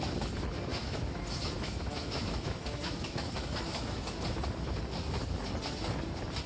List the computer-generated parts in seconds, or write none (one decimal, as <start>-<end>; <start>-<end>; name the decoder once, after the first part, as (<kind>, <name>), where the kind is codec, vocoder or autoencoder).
0.7-4.2 (autoencoder, DAC-VAE)